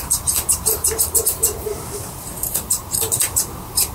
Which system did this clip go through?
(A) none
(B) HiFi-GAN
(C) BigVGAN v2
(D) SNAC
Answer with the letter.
C